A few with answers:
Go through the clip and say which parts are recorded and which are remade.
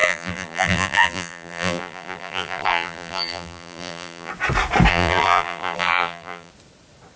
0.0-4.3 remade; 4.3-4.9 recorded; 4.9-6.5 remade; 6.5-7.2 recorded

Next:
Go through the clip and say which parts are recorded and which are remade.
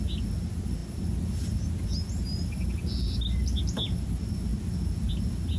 0.0-5.6 recorded